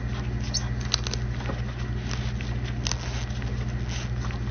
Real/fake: real